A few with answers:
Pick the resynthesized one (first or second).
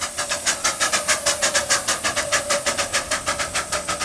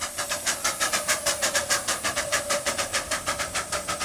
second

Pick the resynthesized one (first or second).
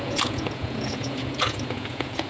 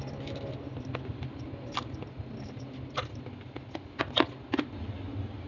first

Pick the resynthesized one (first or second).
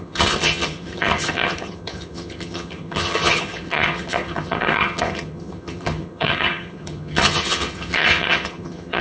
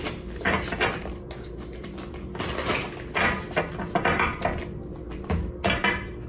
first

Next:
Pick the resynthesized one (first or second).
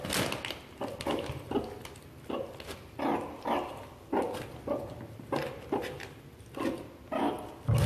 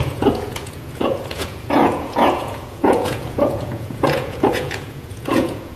second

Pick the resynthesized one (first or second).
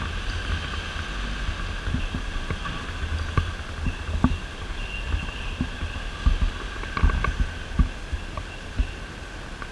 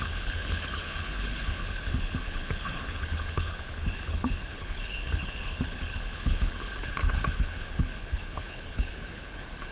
second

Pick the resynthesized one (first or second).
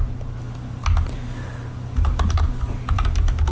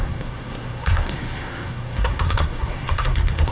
second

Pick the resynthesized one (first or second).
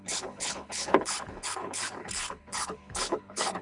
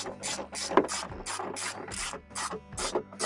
first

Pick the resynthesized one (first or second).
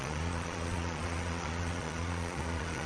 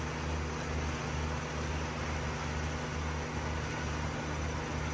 first